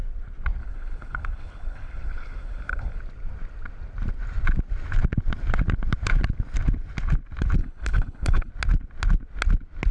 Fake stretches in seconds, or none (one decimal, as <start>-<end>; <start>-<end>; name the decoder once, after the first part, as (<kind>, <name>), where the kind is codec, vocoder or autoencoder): 0.6-3.0 (codec, HILCodec); 7.6-8.5